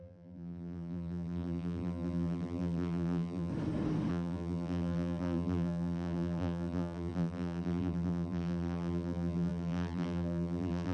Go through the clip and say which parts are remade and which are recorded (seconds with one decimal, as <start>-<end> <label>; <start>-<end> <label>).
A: 0.0-3.5 remade; 3.5-4.1 recorded; 4.1-10.9 remade